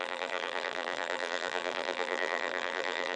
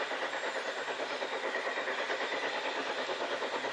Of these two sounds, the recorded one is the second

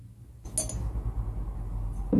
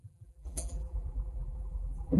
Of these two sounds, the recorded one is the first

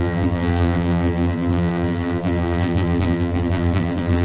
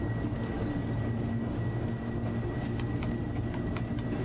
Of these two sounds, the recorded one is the second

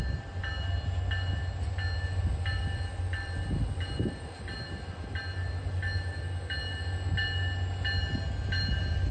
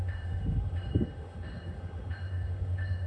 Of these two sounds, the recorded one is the first